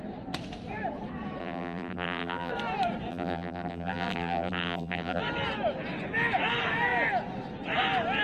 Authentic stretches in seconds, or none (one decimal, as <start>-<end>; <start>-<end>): 0.0-1.4; 2.5-3.1; 5.2-8.2